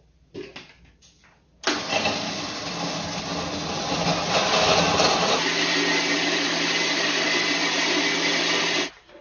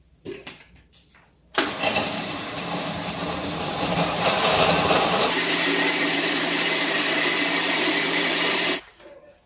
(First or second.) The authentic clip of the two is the first